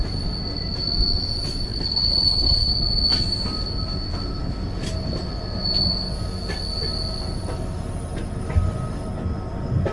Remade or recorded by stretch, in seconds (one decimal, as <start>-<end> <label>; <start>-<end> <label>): 0.0-1.7 recorded; 1.7-2.7 remade; 2.7-9.9 recorded